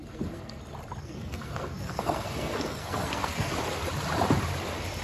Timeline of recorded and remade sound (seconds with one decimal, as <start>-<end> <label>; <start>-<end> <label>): 0.0-0.6 remade; 0.6-1.0 recorded; 1.0-3.5 remade; 3.5-5.0 recorded